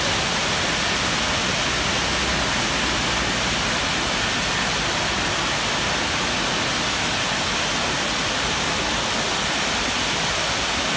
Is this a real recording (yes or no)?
yes